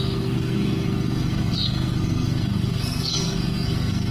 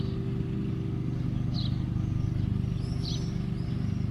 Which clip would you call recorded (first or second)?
second